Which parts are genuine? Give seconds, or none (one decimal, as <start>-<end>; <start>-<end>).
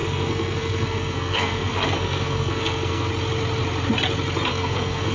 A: 3.1-4.5